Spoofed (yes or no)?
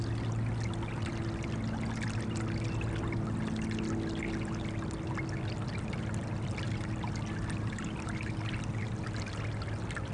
no